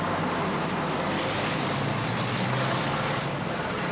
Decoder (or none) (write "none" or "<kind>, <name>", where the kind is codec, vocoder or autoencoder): none